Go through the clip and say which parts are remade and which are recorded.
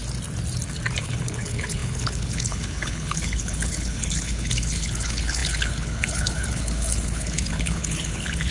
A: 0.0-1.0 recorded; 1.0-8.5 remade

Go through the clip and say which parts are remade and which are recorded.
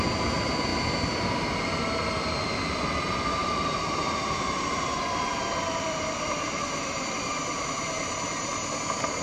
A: 0.0-3.4 recorded; 3.4-8.5 remade; 8.5-9.2 recorded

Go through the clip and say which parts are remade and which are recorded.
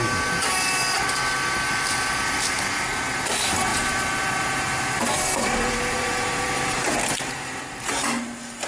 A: 0.0-3.7 recorded; 3.7-7.9 remade; 7.9-8.7 recorded